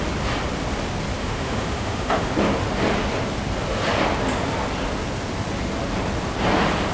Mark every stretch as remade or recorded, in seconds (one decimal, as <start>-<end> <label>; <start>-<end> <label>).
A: 0.0-1.2 recorded; 1.2-2.3 remade; 2.3-6.9 recorded

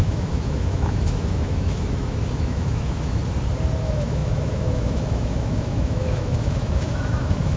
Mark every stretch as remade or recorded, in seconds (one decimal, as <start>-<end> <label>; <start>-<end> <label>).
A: 0.0-3.2 remade; 3.2-3.8 recorded; 3.8-7.6 remade

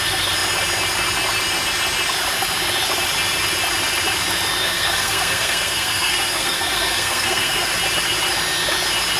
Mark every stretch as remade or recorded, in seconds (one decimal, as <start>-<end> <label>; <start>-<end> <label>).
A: 0.0-4.6 recorded; 4.6-7.7 remade; 7.7-9.2 recorded

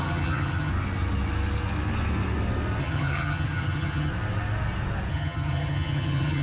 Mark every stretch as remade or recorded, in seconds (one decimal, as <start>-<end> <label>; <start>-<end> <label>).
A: 0.0-0.7 remade; 0.7-2.8 recorded; 2.8-4.1 remade; 4.1-5.1 recorded; 5.1-6.4 remade